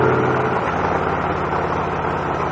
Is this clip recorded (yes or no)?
yes